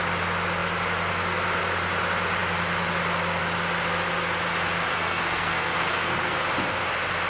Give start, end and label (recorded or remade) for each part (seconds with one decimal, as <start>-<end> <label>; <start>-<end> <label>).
0.0-4.9 recorded; 4.9-6.4 remade; 6.4-7.3 recorded